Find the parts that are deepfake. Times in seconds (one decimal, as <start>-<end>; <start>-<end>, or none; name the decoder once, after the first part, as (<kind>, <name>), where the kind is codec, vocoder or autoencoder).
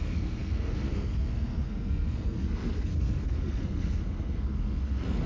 0.0-5.3 (codec, SNAC)